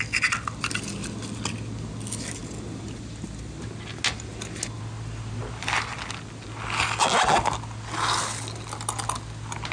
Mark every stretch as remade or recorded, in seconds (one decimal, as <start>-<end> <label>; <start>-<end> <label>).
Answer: 0.0-9.7 recorded